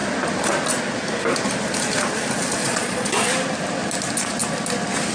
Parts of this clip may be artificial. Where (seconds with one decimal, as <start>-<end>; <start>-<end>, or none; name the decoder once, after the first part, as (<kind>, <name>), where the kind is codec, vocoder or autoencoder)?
2.6-3.3 (vocoder, Vocos)